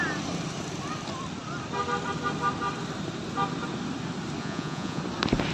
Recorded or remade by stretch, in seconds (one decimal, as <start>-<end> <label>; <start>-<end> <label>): 0.0-4.4 recorded; 4.4-5.0 remade; 5.0-5.5 recorded